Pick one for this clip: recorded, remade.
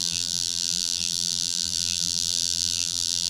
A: remade